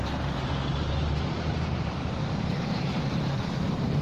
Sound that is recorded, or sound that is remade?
remade